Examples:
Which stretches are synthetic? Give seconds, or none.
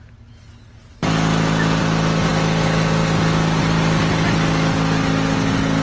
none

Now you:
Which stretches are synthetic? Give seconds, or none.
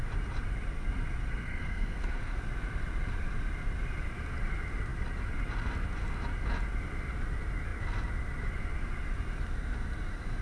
1.3-2.4 (codec, SNAC)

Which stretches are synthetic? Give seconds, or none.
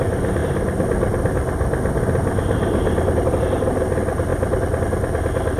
none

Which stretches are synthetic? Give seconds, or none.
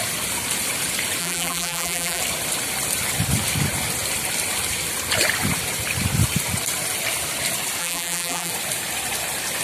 1.2-2.2 (vocoder, BigVGAN v2); 7.8-8.5